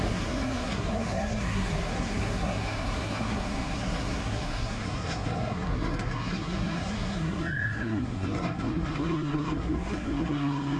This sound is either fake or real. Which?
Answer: fake